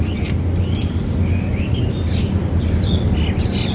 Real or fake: real